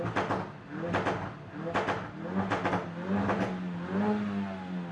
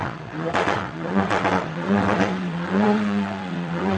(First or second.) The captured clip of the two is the first